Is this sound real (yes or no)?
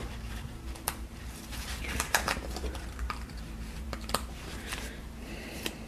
no